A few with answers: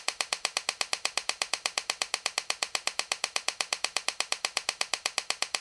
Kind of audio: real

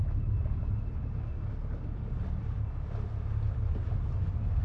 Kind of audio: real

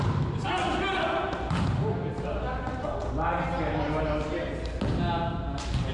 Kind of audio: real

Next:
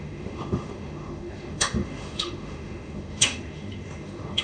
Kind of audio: fake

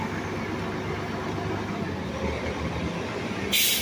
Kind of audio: real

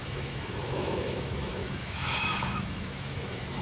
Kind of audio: fake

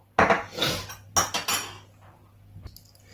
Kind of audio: real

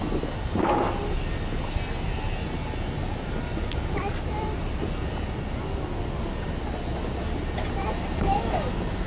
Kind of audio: real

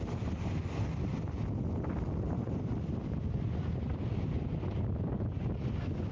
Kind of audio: real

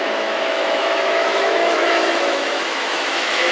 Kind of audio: fake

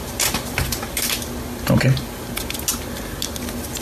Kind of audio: real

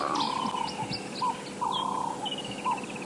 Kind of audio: real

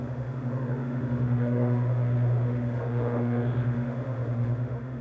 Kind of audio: fake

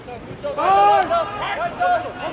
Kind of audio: real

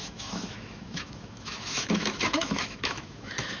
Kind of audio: fake